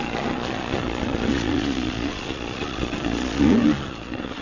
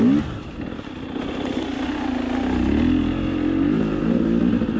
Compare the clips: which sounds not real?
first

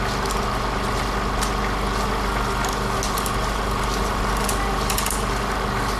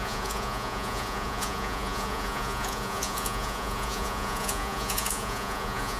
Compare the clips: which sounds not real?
second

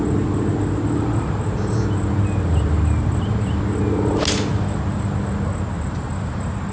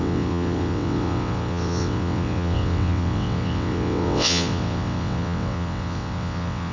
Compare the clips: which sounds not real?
second